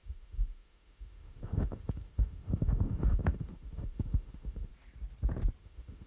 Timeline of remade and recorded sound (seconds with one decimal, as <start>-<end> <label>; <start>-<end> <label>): 0.0-4.7 remade; 4.7-5.6 recorded; 5.6-6.1 remade